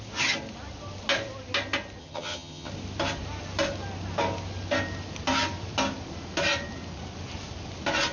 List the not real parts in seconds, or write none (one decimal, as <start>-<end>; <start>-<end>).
2.0-2.7